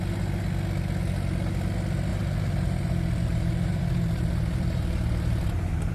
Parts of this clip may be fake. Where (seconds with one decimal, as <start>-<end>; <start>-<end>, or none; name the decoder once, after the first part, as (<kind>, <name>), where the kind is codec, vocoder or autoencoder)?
2.1-5.9 (vocoder, BigVGAN v2)